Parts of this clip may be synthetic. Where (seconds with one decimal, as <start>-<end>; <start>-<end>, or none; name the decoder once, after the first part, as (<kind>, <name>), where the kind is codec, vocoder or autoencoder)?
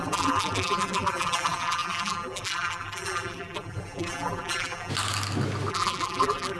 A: 0.0-4.9 (vocoder, BigVGAN v2); 5.7-6.6